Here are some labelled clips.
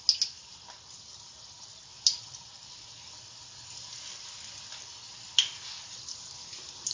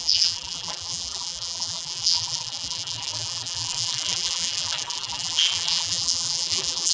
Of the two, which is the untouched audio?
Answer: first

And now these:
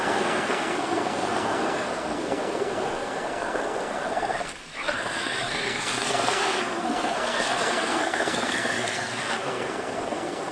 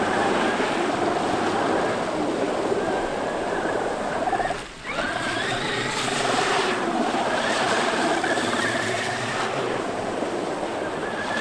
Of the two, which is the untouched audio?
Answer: second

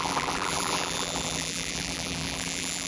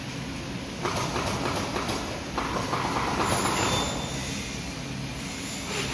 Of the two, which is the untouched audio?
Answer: second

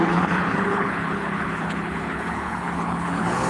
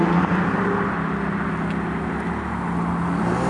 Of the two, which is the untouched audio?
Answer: second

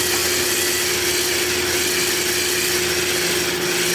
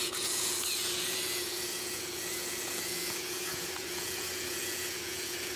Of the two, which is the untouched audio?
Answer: first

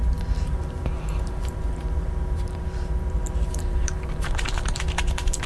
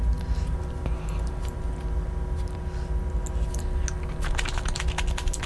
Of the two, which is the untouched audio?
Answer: second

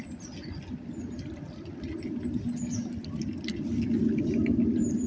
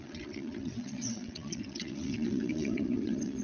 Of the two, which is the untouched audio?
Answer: first